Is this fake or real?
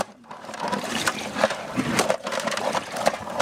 fake